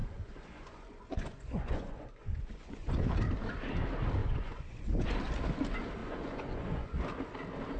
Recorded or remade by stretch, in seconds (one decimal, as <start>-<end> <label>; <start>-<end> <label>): 0.0-3.1 remade; 3.1-4.2 recorded; 4.2-5.1 remade; 5.1-6.0 recorded; 6.0-7.0 remade; 7.0-7.8 recorded